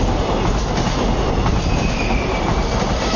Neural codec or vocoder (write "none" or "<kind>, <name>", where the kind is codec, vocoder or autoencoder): none